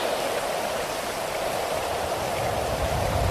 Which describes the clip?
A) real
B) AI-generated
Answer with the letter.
A